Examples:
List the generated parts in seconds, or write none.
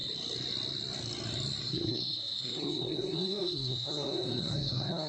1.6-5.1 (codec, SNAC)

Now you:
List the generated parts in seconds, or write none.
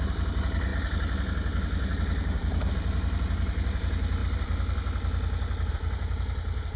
none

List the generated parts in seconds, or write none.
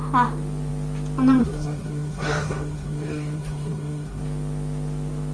1.4-4.2 (codec, SNAC)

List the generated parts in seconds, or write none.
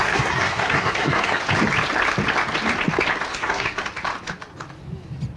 0.0-1.4 (codec, SNAC); 3.3-3.8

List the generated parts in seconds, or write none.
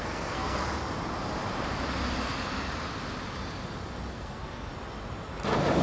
0.0-0.6 (codec, SNAC); 4.1-4.7